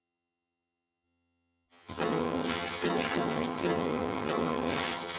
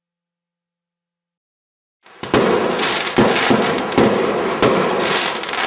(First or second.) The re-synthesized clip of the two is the first